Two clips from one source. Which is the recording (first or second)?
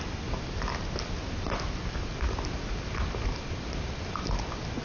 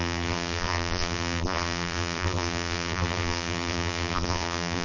first